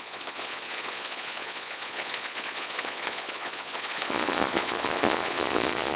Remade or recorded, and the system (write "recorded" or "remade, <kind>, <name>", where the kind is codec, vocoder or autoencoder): remade, vocoder, Vocos